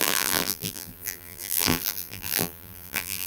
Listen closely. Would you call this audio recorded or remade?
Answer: remade